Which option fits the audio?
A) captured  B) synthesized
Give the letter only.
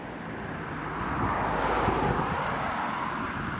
A